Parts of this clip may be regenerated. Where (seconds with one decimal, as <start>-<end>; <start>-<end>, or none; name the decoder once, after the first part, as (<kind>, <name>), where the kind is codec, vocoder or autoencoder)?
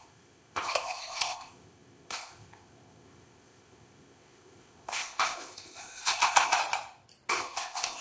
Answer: 0.0-6.6 (codec, ZipCodec); 7.3-8.0